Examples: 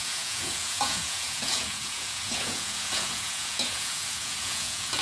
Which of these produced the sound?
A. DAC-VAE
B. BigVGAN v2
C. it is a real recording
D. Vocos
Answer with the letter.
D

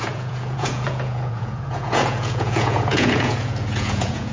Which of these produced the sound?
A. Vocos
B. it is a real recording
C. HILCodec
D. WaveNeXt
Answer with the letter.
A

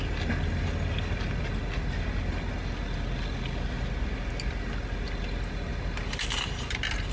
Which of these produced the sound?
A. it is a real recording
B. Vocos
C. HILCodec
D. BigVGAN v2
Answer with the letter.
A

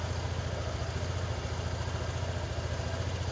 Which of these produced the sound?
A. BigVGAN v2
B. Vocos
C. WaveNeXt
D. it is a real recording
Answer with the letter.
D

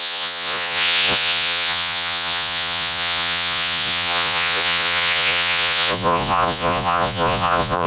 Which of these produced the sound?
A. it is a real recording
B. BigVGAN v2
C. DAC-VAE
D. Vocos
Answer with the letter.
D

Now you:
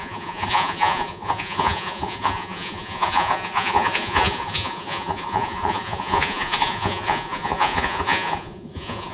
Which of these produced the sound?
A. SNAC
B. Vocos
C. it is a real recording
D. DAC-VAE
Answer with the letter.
B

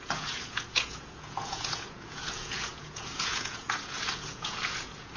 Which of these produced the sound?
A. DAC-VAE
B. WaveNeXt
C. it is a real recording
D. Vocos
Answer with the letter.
D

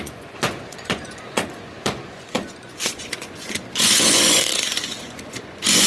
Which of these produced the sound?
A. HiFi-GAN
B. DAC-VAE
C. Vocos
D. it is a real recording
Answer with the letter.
C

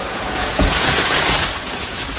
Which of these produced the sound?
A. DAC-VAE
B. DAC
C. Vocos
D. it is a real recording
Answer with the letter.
C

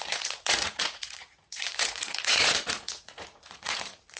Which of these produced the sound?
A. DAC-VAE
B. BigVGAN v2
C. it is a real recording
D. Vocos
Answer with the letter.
D